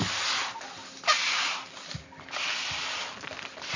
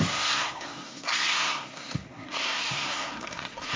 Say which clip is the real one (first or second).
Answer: first